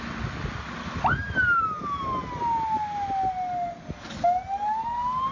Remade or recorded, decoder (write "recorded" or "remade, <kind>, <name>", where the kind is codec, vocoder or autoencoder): recorded